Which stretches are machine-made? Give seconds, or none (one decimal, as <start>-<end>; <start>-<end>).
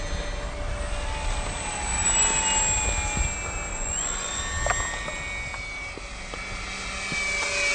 3.7-4.4